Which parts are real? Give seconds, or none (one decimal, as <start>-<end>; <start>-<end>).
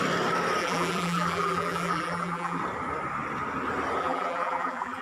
0.0-0.6; 2.6-4.0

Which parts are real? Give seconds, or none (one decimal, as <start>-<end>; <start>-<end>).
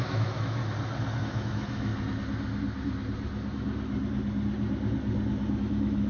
0.6-1.2; 1.9-5.6